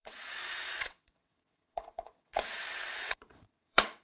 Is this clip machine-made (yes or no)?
yes